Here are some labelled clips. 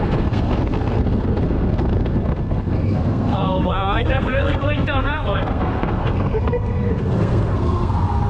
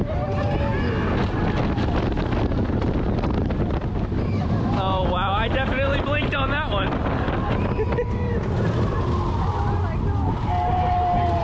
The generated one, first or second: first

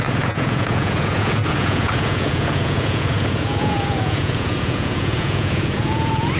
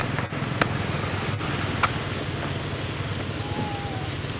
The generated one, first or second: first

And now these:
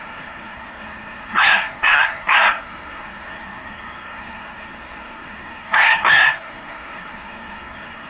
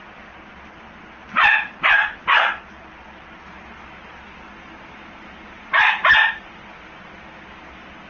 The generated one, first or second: first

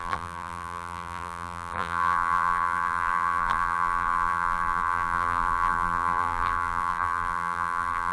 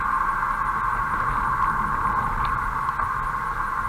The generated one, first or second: first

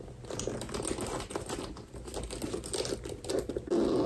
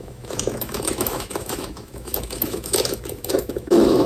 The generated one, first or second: second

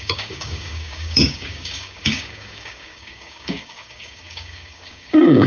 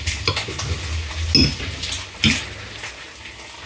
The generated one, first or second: first